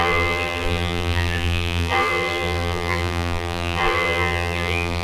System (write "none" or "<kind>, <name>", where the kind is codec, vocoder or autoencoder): vocoder, BigVGAN v2